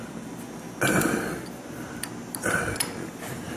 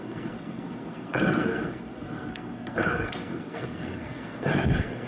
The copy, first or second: second